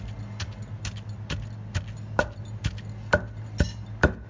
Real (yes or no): yes